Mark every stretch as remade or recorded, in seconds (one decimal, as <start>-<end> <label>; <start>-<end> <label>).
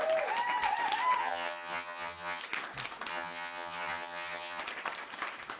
0.0-1.2 recorded; 1.2-2.4 remade; 2.4-3.1 recorded; 3.1-4.6 remade; 4.6-5.6 recorded